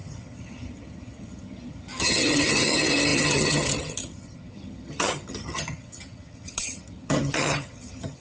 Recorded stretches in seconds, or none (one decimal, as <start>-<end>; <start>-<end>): none